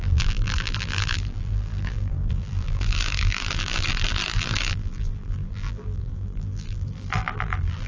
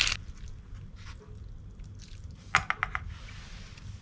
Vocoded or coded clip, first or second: first